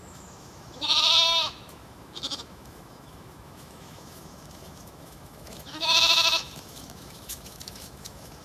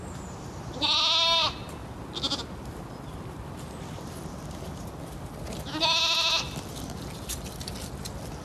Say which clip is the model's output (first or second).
first